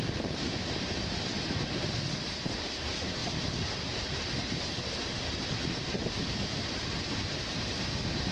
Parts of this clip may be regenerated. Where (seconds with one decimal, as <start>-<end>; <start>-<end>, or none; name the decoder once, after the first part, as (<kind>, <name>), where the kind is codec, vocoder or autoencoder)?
0.0-1.3 (vocoder, BigVGAN v2); 2.5-8.3